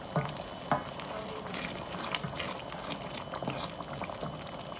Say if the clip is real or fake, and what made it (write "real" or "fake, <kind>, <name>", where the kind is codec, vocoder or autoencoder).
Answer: real